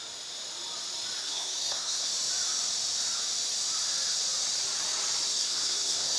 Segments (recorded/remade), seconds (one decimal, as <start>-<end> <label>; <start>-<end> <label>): 0.0-1.2 recorded; 1.2-2.1 remade; 2.1-5.4 recorded; 5.4-6.2 remade